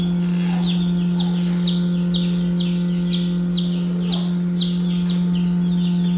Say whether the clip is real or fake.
real